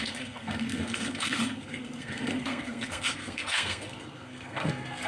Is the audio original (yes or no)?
no